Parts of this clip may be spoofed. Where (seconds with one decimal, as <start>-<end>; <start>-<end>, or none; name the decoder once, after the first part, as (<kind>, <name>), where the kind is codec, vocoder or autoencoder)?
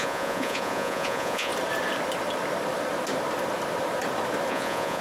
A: 0.0-1.5 (vocoder, Vocos); 4.5-5.0